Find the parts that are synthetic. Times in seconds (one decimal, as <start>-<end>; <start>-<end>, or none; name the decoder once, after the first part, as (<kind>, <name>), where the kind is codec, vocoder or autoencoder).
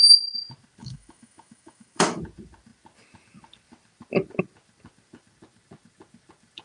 0.8-2.2 (autoencoder, DAC-VAE)